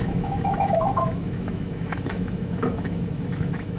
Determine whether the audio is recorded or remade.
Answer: remade